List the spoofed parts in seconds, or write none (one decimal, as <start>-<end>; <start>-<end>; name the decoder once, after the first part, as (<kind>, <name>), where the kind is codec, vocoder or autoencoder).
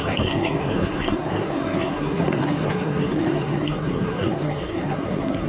0.0-5.5 (codec, SNAC)